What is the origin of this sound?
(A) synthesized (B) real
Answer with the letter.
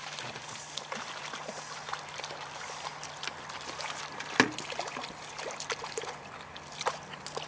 B